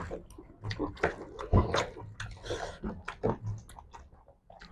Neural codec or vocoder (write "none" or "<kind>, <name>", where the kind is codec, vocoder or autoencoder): none